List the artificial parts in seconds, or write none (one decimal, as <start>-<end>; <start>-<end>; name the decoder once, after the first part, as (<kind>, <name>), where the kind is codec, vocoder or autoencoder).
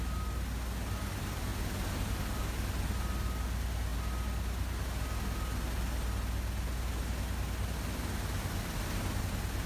none